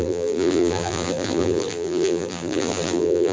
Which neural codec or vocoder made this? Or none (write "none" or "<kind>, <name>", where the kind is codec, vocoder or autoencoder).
vocoder, BigVGAN v2